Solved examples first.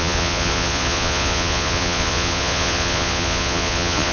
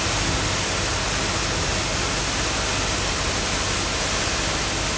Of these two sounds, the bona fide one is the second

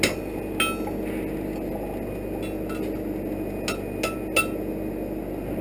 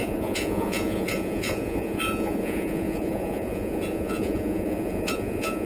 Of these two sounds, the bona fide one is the first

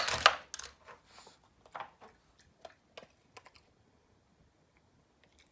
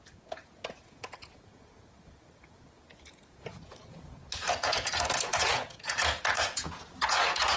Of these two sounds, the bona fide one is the first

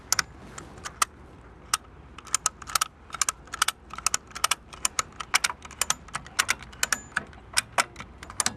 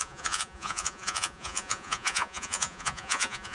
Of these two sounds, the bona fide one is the first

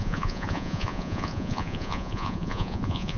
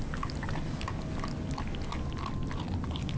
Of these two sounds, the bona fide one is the second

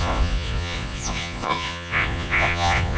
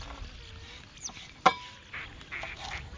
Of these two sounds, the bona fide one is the second